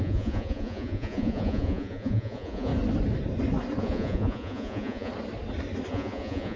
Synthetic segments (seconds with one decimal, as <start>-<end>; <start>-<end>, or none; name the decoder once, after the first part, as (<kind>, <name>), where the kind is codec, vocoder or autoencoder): 0.0-2.7 (vocoder, Vocos); 3.8-5.1; 5.9-6.6